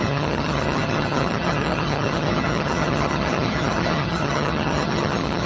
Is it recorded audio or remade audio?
remade